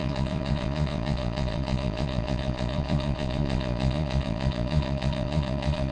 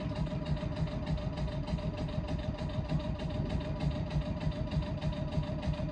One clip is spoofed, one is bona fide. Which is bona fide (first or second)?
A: second